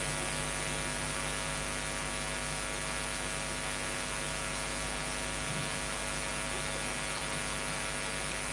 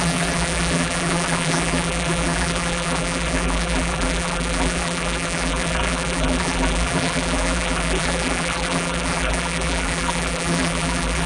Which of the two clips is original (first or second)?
first